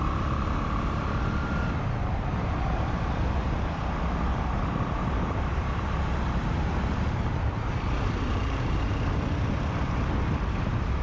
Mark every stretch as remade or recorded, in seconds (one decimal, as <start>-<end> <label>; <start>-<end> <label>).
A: 0.0-2.0 recorded; 2.0-3.1 remade; 3.1-4.3 recorded; 4.3-8.9 remade; 8.9-11.0 recorded